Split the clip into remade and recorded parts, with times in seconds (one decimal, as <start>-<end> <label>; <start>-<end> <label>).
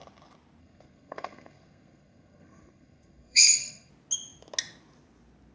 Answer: 0.0-0.6 recorded; 0.6-3.9 remade; 3.9-5.5 recorded